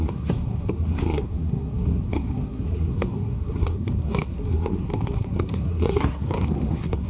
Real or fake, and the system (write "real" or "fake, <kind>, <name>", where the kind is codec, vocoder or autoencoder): fake, codec, SNAC